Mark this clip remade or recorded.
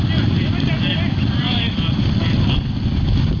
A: recorded